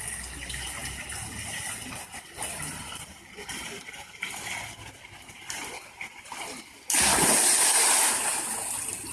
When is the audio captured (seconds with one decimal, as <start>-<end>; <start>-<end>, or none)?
6.3-9.1